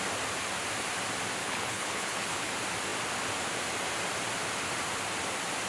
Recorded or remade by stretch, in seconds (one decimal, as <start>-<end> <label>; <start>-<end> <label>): 0.0-1.4 recorded; 1.4-2.5 remade; 2.5-5.7 recorded